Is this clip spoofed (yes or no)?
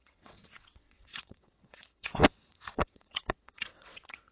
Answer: yes